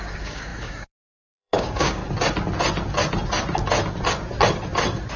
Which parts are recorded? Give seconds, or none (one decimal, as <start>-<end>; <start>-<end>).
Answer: 2.0-5.2